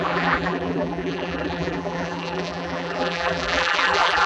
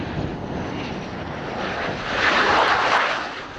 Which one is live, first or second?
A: second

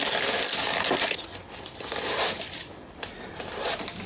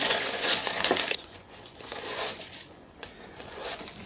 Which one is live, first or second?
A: first